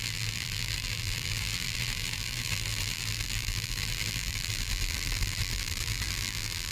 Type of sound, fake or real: fake